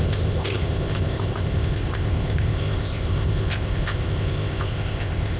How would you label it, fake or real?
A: fake